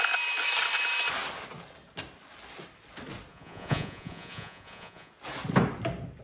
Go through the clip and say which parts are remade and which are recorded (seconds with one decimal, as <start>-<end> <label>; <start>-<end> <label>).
0.0-3.3 recorded; 3.3-5.1 remade; 5.1-6.2 recorded